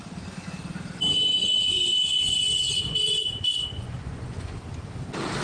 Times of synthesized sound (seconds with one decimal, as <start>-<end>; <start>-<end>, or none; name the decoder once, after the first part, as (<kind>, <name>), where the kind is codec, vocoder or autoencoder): 1.4-4.6 (vocoder, Vocos)